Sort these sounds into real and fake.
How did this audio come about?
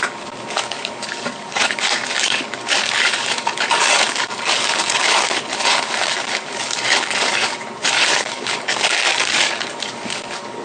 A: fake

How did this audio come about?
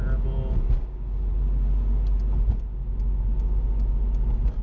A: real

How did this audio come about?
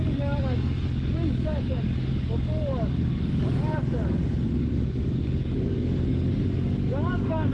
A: fake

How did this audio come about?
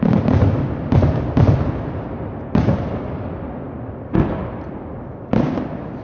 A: real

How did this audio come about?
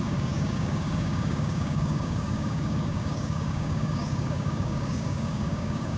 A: fake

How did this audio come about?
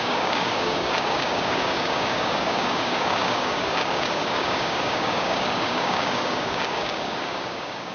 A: fake